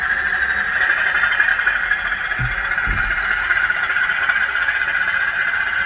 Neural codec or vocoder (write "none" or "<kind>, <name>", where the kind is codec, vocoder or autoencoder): none